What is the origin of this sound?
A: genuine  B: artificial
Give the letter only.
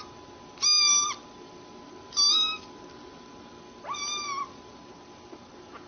A